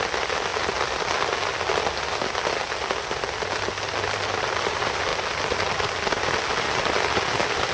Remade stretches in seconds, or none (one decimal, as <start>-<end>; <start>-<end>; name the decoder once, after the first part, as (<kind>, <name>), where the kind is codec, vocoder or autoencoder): 0.0-0.5 (vocoder, BigVGAN v2); 3.9-5.1; 5.7-7.7